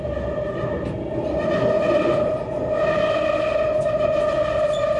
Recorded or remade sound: recorded